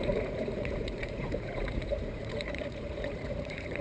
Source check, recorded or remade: remade